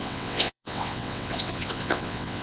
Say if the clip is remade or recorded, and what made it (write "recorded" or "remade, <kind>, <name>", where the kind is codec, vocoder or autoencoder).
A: remade, vocoder, WaveNeXt